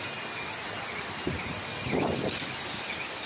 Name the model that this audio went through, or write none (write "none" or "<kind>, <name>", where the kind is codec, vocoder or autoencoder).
none